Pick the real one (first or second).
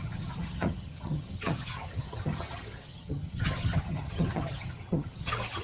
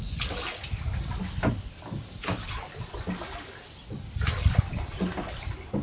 second